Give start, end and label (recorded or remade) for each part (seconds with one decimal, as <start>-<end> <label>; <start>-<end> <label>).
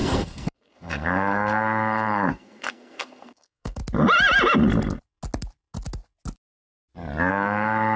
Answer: 0.0-3.8 remade; 3.8-7.3 recorded; 7.3-8.0 remade